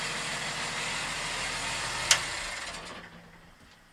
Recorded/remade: recorded